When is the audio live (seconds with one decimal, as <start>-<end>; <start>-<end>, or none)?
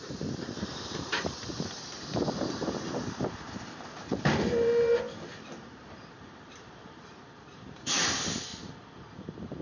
8.5-9.2